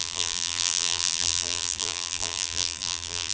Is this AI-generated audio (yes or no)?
yes